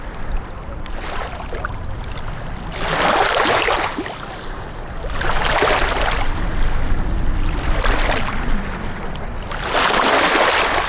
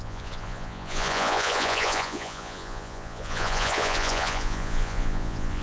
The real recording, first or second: first